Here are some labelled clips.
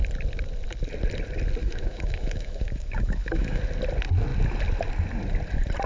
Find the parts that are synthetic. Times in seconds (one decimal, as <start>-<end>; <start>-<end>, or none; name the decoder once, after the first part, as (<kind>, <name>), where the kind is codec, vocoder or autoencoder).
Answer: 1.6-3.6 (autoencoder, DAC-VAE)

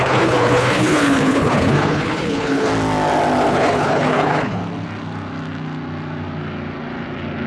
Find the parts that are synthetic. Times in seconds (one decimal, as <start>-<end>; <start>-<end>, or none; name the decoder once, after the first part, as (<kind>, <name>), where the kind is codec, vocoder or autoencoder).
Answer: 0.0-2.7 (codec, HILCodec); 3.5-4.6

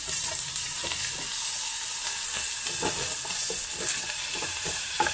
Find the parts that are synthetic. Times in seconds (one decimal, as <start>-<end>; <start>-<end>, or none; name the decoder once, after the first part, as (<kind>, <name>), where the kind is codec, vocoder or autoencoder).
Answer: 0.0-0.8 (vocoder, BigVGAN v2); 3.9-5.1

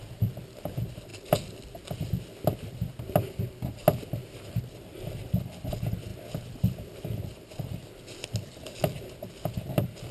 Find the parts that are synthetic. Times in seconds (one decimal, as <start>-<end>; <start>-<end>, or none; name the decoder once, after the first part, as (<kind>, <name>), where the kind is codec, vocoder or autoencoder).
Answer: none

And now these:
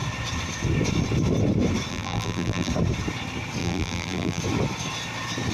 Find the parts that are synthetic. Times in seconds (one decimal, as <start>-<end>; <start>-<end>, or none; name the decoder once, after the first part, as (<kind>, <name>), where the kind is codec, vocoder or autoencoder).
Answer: 1.9-2.7 (vocoder, BigVGAN v2); 3.6-4.4

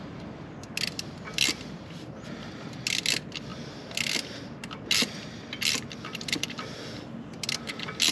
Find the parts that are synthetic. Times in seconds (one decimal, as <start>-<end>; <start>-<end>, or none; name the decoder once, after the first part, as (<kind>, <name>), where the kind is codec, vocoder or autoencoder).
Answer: none